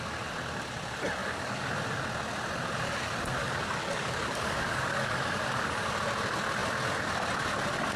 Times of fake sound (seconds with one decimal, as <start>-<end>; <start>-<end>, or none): 1.2-1.7; 3.4-5.9